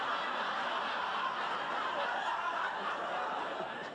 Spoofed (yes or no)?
no